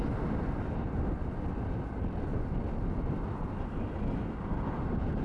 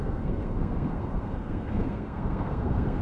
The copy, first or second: second